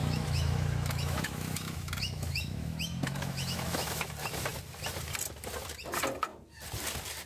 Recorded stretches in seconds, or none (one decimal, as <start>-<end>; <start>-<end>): 4.1-7.3